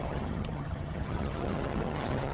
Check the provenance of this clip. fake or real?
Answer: fake